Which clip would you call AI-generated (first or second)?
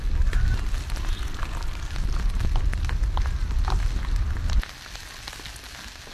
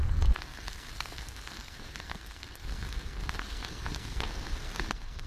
second